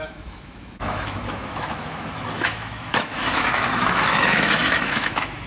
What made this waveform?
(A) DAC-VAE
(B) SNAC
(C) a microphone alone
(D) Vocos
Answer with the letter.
A